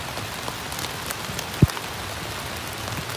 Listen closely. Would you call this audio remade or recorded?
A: recorded